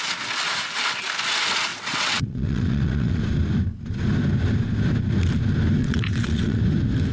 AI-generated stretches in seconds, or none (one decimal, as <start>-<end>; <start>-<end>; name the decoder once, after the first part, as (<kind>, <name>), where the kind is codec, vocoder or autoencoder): 1.7-3.2 (vocoder, WaveNeXt); 5.8-6.6